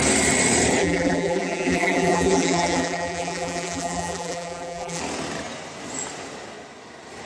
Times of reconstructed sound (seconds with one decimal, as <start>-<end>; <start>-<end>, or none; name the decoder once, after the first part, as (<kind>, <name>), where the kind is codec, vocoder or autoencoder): 0.8-5.0 (vocoder, BigVGAN v2)